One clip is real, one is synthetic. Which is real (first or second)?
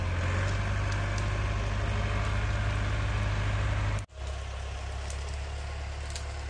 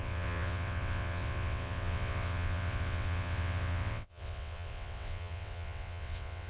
first